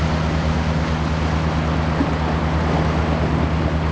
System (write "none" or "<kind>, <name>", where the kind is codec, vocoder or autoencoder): none